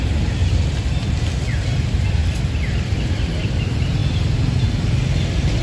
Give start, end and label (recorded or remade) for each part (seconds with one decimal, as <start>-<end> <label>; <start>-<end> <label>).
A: 0.0-0.4 recorded; 0.4-0.9 remade; 0.9-2.2 recorded; 2.2-3.6 remade; 3.6-5.6 recorded